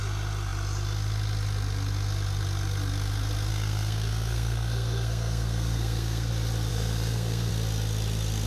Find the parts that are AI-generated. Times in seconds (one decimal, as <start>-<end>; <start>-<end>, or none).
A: 3.5-6.3; 6.7-7.5